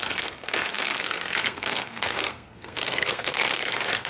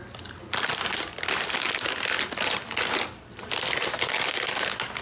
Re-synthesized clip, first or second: first